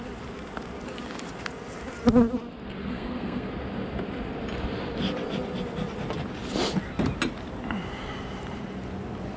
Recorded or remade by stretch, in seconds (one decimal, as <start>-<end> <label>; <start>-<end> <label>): 0.0-2.8 recorded; 2.8-3.5 remade; 3.5-9.4 recorded